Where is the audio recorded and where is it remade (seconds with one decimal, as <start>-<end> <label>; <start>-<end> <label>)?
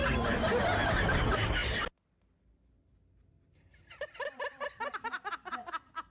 0.0-0.9 remade; 0.9-6.1 recorded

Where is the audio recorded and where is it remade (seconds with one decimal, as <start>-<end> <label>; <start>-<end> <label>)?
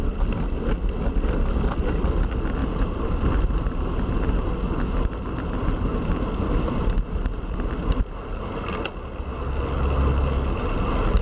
0.0-2.6 recorded; 2.6-4.5 remade; 4.5-11.2 recorded